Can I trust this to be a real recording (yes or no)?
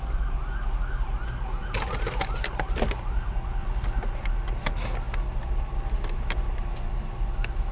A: yes